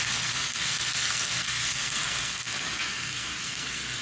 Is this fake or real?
fake